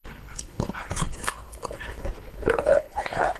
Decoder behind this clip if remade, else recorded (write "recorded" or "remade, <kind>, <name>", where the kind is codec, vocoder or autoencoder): remade, codec, HILCodec